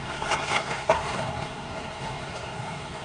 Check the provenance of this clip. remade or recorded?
remade